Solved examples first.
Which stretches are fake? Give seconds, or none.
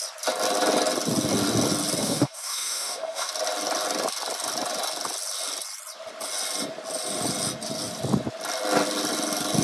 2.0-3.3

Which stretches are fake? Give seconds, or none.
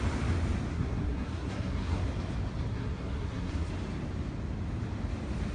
0.7-2.0; 2.7-3.7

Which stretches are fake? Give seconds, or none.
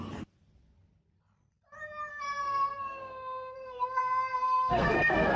2.1-5.4